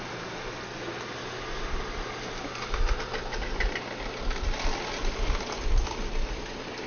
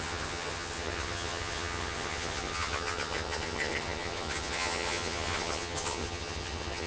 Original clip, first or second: first